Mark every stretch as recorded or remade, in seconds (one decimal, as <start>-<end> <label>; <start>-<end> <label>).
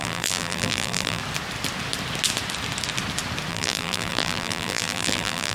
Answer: 0.0-1.2 remade; 1.2-3.5 recorded; 3.5-5.5 remade